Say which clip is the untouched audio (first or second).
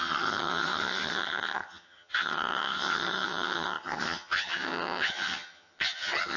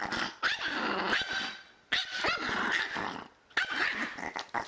second